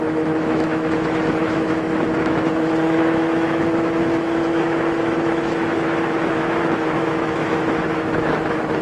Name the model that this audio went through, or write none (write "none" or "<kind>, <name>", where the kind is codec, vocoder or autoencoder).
autoencoder, DAC-VAE